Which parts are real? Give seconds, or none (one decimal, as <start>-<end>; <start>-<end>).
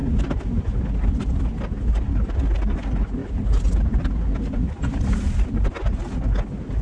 0.0-6.8